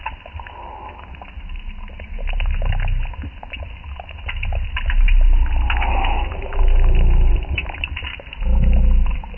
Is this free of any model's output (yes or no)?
yes